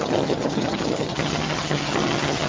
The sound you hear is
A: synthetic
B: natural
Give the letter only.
A